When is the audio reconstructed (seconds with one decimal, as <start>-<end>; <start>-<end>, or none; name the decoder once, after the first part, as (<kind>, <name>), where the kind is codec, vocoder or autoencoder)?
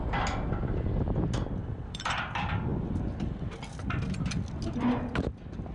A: 1.6-2.2 (vocoder, BigVGAN v2)